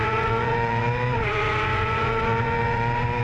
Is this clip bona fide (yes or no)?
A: no